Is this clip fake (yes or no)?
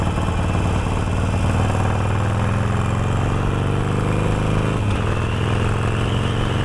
no